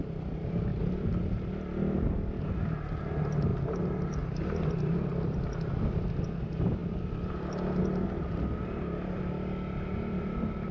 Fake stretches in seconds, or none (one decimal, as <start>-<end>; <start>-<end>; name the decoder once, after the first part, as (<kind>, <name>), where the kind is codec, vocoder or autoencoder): 0.7-1.5 (vocoder, BigVGAN v2); 6.8-7.8